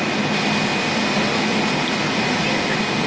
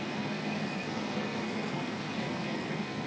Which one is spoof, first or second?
second